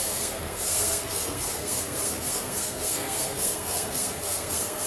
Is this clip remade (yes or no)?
yes